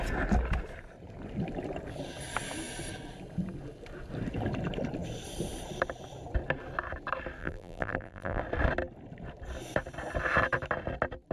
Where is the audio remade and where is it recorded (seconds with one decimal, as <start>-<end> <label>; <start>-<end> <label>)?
0.0-7.4 recorded; 7.4-8.4 remade; 8.4-11.3 recorded